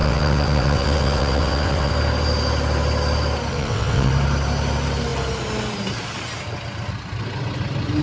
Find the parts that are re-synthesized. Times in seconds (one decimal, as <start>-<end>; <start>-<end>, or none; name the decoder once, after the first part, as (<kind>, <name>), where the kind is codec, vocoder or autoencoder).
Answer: 0.0-1.9 (vocoder, WaveNeXt); 3.5-4.1